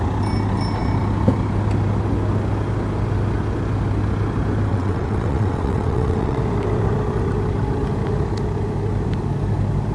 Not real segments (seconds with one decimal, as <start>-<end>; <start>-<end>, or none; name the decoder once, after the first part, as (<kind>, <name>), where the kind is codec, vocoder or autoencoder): 4.7-6.4 (vocoder, WaveNeXt)